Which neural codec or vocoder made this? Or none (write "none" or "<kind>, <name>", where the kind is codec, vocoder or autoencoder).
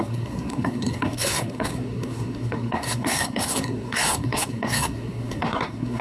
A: codec, SNAC